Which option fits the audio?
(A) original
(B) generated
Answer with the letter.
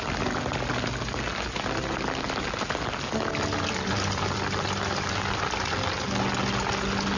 A